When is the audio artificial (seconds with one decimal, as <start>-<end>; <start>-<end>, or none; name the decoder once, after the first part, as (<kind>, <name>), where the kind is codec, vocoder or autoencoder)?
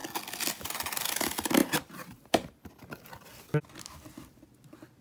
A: 1.6-2.8 (vocoder, BigVGAN v2)